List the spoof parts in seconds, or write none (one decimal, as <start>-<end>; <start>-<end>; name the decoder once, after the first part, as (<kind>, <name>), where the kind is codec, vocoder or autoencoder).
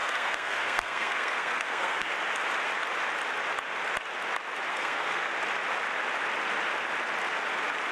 0.0-2.1 (codec, SNAC); 4.7-5.3